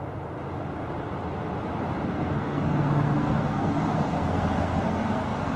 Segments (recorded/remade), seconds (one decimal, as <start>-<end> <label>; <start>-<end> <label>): 0.0-2.0 recorded; 2.0-5.6 remade